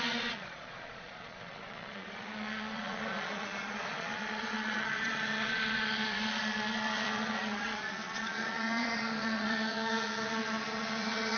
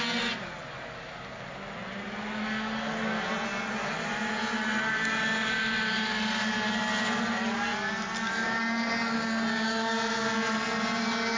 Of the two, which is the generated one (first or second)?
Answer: first